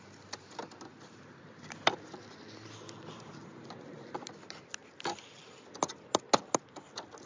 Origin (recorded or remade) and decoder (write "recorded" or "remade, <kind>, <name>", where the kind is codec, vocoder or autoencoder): recorded